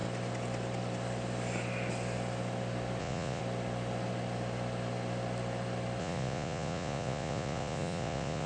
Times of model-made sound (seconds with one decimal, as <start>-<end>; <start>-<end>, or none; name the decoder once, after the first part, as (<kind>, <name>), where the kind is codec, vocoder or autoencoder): 3.0-3.4 (vocoder, Vocos); 6.0-8.5